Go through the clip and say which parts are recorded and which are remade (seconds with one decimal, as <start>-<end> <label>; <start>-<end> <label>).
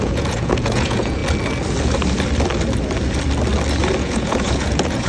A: 0.0-1.2 remade; 1.2-4.0 recorded; 4.0-5.1 remade